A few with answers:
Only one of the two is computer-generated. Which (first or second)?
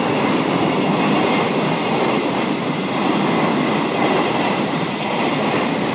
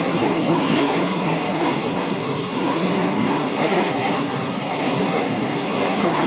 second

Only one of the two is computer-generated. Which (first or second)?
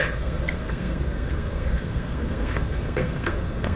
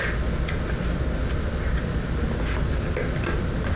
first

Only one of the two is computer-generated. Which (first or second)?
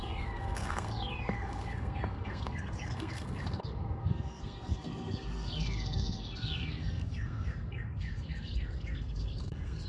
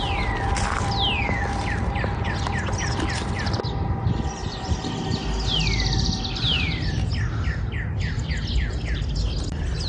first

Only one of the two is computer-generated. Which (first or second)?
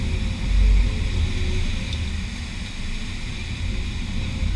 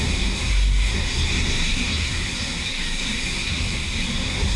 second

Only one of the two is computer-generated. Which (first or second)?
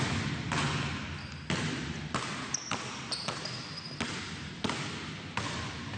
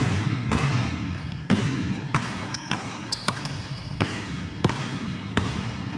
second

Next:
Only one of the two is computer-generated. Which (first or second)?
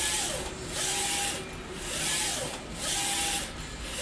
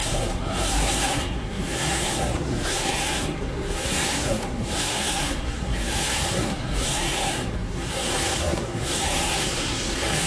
second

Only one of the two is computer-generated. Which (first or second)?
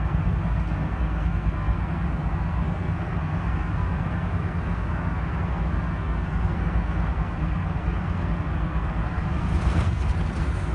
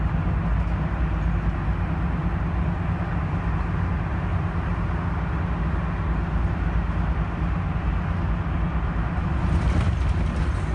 first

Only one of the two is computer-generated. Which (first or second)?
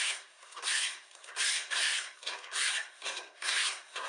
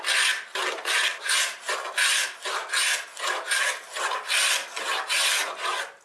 first